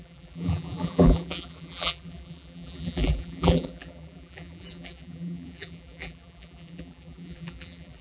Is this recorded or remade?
remade